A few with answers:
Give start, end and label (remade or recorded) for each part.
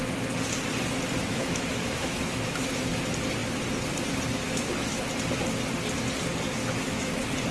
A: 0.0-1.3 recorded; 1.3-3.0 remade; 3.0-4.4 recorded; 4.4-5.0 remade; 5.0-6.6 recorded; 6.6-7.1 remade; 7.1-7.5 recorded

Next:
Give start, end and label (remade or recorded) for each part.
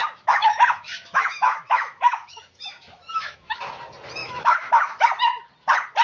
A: 0.0-3.6 remade; 3.6-4.2 recorded; 4.2-5.1 remade; 5.1-6.0 recorded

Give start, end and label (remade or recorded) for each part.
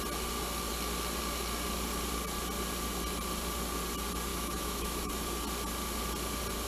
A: 0.0-4.3 recorded; 4.3-5.1 remade; 5.1-6.7 recorded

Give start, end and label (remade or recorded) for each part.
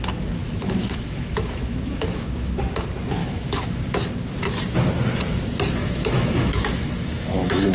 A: 0.0-0.4 recorded; 0.4-2.5 remade; 2.5-3.2 recorded; 3.2-3.8 remade; 3.8-5.8 recorded; 5.8-7.7 remade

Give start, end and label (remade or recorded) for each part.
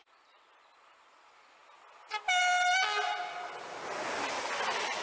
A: 0.0-5.0 recorded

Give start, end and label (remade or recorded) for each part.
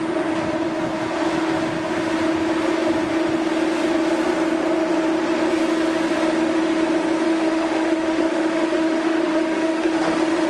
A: 0.0-7.3 recorded; 7.3-10.1 remade; 10.1-10.5 recorded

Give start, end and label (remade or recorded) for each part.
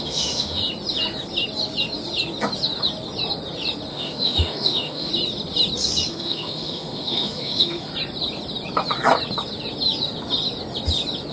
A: 0.0-0.6 remade; 0.6-3.9 recorded; 3.9-5.1 remade; 5.1-6.1 recorded; 6.1-7.9 remade; 7.9-11.3 recorded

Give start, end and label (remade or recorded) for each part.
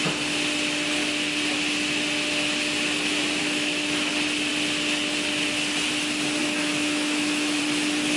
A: 0.0-3.4 recorded; 3.4-4.1 remade; 4.1-6.4 recorded; 6.4-7.6 remade; 7.6-8.2 recorded